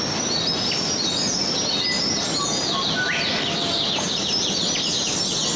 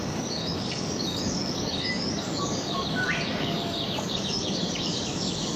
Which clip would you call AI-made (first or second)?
second